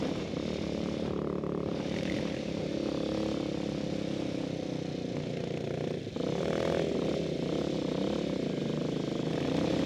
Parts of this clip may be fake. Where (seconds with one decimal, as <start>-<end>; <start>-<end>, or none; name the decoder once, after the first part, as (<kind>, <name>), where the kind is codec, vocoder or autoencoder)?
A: 0.0-2.7 (vocoder, BigVGAN v2)